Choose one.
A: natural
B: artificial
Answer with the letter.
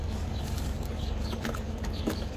B